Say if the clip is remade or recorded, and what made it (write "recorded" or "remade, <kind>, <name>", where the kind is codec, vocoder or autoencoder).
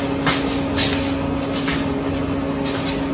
recorded